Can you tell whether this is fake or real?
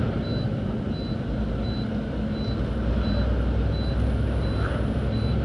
real